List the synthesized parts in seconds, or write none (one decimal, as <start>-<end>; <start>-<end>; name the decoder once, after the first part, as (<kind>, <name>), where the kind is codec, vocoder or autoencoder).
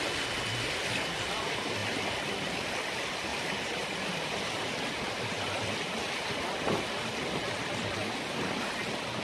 none